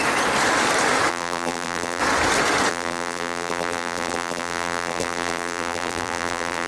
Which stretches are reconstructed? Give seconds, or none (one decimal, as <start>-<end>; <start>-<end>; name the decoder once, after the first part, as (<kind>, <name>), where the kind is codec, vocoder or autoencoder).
1.1-2.0 (vocoder, BigVGAN v2); 2.7-6.7